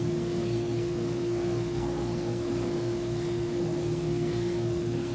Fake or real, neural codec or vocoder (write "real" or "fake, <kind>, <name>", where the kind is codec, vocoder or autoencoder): fake, codec, SNAC